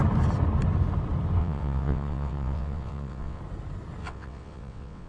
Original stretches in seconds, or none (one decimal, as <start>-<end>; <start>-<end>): 0.0-1.4; 3.4-4.0